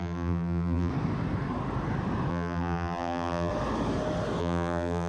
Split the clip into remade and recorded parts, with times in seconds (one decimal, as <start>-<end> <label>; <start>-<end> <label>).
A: 0.0-0.9 remade; 0.9-2.3 recorded; 2.3-3.5 remade; 3.5-4.4 recorded; 4.4-5.1 remade